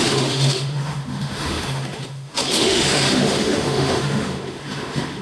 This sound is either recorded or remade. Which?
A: remade